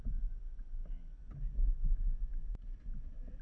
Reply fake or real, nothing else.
real